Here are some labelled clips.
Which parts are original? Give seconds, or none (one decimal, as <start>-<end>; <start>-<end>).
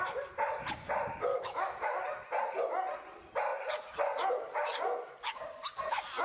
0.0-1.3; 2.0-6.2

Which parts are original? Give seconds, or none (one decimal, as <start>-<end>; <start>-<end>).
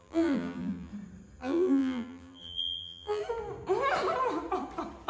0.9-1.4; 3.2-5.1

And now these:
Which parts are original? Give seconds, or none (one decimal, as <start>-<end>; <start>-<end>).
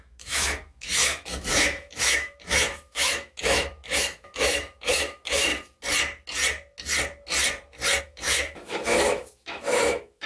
5.5-8.0